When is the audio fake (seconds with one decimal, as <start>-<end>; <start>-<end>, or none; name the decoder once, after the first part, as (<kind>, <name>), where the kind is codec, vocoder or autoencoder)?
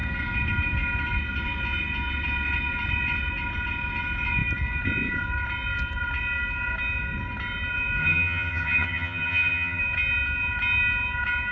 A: 8.0-9.8 (vocoder, HiFi-GAN)